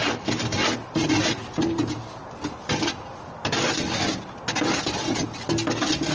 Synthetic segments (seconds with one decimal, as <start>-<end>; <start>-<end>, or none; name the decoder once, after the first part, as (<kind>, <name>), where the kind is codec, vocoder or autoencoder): none